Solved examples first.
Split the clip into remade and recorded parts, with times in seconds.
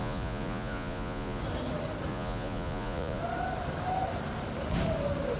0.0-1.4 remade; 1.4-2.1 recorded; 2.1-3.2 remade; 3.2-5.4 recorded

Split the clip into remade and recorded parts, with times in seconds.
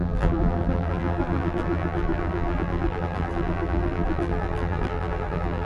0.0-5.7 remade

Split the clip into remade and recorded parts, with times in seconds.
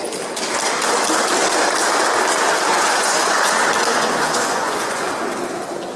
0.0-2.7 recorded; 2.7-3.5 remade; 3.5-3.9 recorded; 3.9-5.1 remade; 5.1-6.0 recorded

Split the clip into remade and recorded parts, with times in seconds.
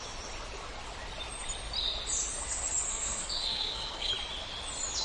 0.0-2.9 recorded; 2.9-4.1 remade; 4.1-5.0 recorded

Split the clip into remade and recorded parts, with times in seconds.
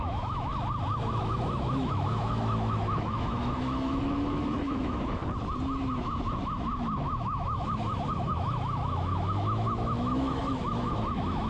0.0-0.5 remade; 0.5-1.1 recorded; 1.1-5.2 remade; 5.2-5.9 recorded; 5.9-11.5 remade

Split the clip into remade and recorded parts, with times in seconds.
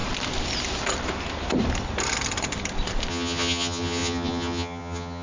0.0-3.1 recorded; 3.1-5.2 remade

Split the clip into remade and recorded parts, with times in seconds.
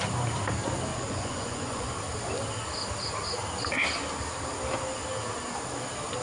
0.0-0.9 recorded; 0.9-1.9 remade; 1.9-6.2 recorded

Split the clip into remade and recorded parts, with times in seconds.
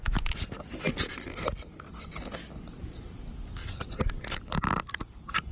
0.0-5.5 recorded